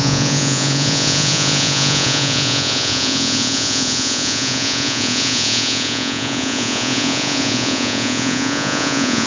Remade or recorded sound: remade